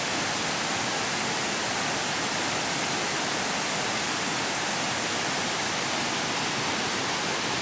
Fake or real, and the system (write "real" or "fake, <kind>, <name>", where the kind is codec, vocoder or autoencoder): real